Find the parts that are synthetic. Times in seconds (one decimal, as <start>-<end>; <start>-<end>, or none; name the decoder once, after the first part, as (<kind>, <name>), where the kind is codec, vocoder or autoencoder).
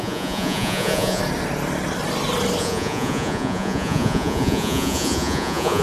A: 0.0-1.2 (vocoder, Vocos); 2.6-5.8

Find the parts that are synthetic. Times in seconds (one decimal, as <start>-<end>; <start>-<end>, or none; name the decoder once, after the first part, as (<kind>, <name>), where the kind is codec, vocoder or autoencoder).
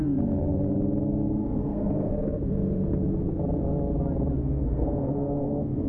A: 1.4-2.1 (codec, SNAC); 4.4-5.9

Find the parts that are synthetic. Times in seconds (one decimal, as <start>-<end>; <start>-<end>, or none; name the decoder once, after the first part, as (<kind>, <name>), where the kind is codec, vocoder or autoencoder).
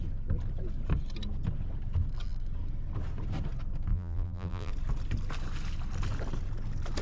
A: 3.9-4.7 (vocoder, BigVGAN v2)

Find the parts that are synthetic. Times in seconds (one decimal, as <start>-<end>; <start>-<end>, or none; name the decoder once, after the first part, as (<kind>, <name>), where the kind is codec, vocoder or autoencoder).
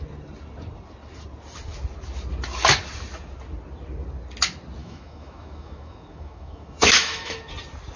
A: 4.8-7.5 (autoencoder, DAC-VAE)